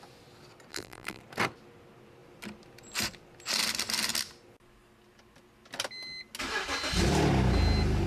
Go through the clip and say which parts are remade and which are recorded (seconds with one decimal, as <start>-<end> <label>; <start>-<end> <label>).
0.0-0.7 recorded; 0.7-1.2 remade; 1.2-8.1 recorded